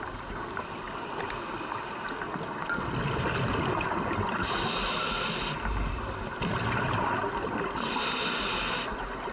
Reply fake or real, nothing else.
real